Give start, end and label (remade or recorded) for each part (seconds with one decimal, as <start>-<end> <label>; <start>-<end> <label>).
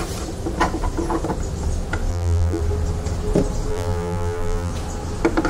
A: 0.0-2.1 recorded; 2.1-2.6 remade; 2.6-3.7 recorded; 3.7-4.7 remade; 4.7-5.5 recorded